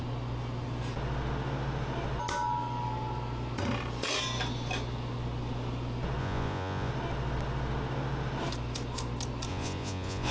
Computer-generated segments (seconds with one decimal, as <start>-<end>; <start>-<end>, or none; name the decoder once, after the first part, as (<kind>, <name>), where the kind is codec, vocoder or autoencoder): 6.2-6.9 (vocoder, Vocos); 9.5-10.3